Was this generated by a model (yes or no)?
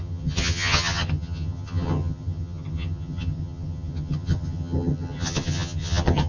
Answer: yes